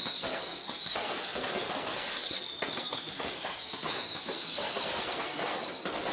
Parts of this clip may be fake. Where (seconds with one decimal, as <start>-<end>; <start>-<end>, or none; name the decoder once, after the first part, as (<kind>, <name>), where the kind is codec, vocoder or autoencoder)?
0.0-6.1 (codec, SNAC)